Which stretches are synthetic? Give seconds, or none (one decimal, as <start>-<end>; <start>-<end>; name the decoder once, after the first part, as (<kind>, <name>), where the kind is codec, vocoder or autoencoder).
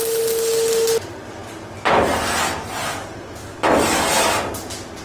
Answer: none